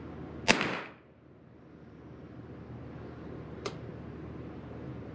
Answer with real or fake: real